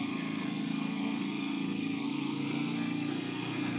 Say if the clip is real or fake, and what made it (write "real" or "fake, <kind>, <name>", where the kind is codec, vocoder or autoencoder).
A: fake, codec, SNAC